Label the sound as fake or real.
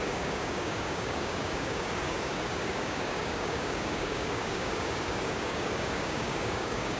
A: fake